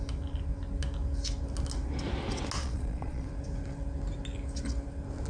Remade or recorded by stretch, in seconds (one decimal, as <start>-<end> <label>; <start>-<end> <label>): 0.0-2.6 recorded; 2.6-3.3 remade; 3.3-5.3 recorded